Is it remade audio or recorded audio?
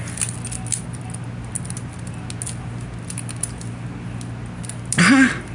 recorded